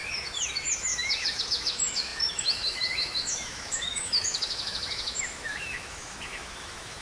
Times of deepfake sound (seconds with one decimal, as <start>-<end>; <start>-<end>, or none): 0.0-7.0